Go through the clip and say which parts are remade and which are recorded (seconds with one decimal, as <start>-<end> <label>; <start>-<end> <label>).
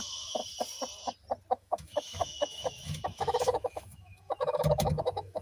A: 0.0-0.4 remade; 0.4-1.5 recorded; 1.5-5.4 remade